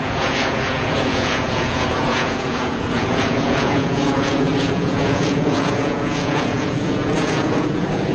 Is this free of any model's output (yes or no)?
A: no